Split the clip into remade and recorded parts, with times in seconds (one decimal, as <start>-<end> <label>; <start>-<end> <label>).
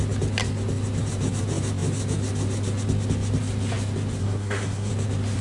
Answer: 0.0-4.2 recorded; 4.2-4.9 remade; 4.9-5.4 recorded